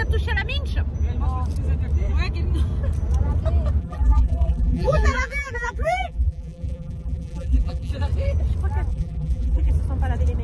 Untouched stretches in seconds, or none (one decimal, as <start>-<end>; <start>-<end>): 0.0-3.8; 7.9-8.9; 9.7-10.4